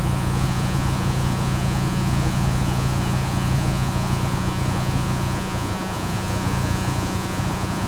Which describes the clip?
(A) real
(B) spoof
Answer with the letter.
B